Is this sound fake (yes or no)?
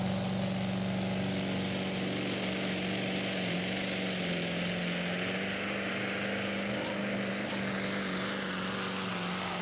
no